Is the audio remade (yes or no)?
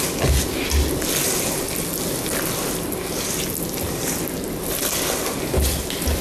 no